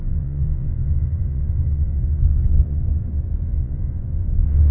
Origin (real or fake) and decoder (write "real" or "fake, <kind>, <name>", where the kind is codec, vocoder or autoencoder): fake, vocoder, Vocos